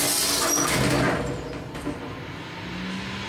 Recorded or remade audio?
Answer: recorded